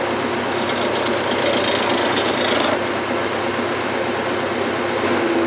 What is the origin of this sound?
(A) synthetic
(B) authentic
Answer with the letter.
B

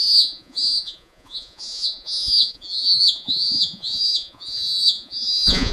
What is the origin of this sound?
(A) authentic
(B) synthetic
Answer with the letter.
B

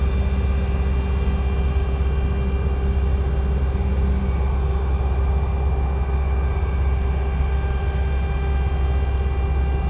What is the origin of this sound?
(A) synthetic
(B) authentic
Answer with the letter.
B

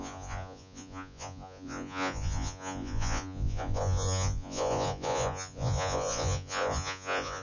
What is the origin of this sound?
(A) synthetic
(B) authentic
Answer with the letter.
A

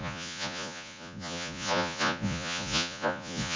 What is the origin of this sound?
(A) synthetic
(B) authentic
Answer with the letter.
A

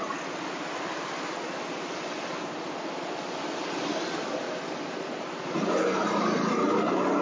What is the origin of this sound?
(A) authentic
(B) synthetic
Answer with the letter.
A